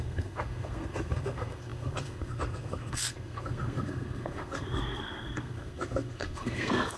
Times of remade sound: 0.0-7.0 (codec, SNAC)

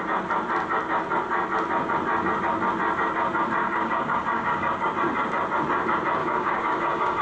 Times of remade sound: 3.6-4.9 (codec, DAC); 6.2-7.2

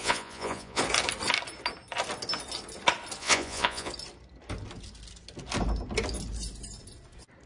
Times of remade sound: 0.0-0.8 (vocoder, Vocos); 3.2-3.9

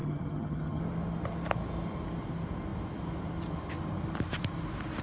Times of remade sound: 0.0-0.8 (vocoder, HiFi-GAN)

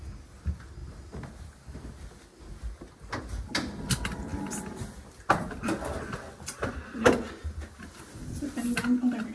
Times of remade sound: none

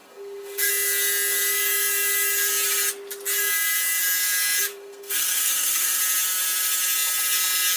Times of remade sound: 0.0-0.7 (codec, SNAC); 4.7-6.0

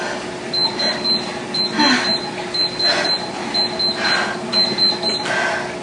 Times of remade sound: none

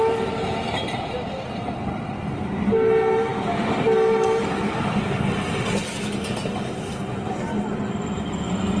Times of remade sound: none